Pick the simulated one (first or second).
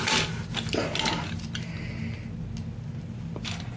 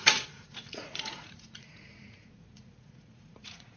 second